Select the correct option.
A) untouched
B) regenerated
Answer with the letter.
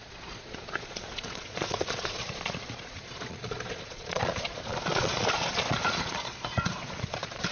B